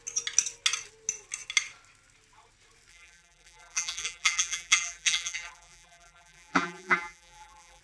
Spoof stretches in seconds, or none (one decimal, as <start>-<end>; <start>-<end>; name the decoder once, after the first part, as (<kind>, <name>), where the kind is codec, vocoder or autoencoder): 2.9-7.8 (vocoder, BigVGAN v2)